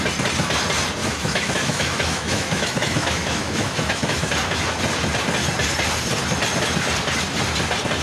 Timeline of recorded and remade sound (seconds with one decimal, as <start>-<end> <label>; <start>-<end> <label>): 0.0-1.0 recorded; 1.0-4.3 remade; 4.3-8.0 recorded